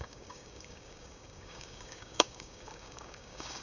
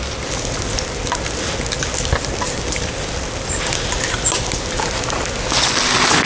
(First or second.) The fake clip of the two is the first